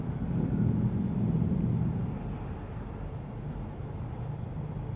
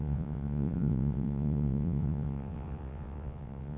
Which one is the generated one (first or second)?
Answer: second